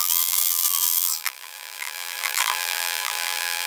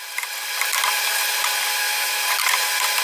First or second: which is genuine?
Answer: second